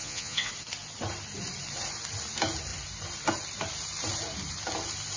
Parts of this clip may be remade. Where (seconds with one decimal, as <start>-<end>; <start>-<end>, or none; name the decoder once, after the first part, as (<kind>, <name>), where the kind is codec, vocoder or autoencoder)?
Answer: 0.0-0.5 (vocoder, Vocos)